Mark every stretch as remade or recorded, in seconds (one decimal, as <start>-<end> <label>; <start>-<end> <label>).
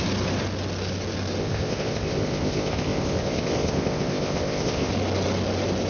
0.0-1.4 recorded; 1.4-4.9 remade; 4.9-5.9 recorded